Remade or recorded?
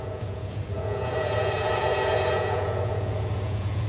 remade